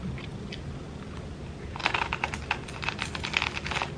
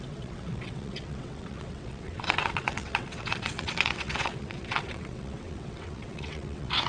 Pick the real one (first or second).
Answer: first